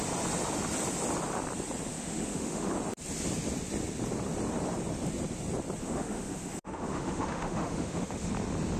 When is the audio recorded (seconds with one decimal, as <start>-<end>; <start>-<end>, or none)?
0.0-1.9; 2.7-5.8; 8.3-8.8